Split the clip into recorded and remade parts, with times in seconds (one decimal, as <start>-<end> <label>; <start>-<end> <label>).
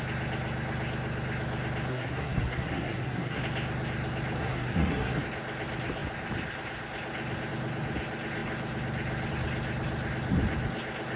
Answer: 0.0-1.9 recorded; 1.9-3.4 remade; 3.4-4.4 recorded; 4.4-5.2 remade; 5.2-11.2 recorded